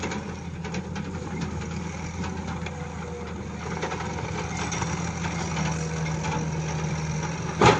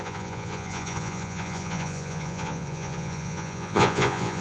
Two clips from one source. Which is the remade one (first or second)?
second